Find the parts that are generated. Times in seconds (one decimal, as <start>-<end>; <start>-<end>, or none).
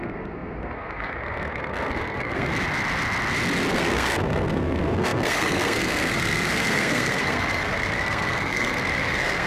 0.0-2.5; 3.7-9.5